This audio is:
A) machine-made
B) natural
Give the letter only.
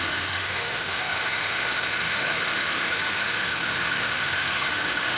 A